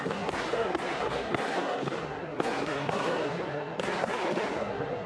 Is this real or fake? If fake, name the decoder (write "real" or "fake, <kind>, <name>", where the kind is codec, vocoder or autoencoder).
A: fake, codec, SNAC